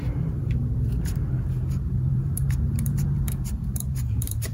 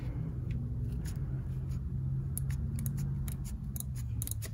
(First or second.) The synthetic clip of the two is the first